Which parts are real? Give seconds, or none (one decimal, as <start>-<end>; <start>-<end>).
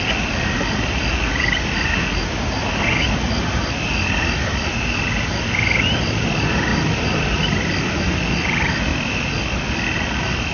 0.0-6.7; 7.9-8.9; 9.5-10.5